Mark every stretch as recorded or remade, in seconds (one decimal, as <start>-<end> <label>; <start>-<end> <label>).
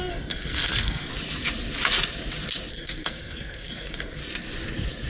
0.0-1.1 remade; 1.1-2.7 recorded; 2.7-4.2 remade; 4.2-5.1 recorded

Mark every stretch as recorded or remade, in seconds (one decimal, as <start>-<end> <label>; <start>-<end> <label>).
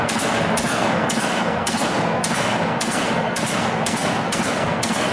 0.0-5.1 remade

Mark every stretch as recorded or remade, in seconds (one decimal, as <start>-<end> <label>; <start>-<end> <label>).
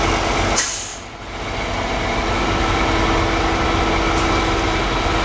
0.0-5.2 recorded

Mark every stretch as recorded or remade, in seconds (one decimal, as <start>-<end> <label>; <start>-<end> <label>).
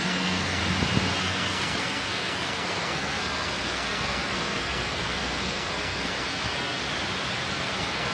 0.0-0.6 remade; 0.6-1.2 recorded; 1.2-6.8 remade; 6.8-7.5 recorded; 7.5-8.1 remade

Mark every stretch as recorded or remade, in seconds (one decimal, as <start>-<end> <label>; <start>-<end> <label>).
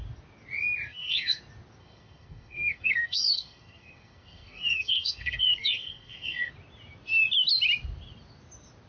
0.0-0.9 recorded; 0.9-1.4 remade; 1.4-1.8 recorded; 1.8-6.5 remade; 6.5-8.9 recorded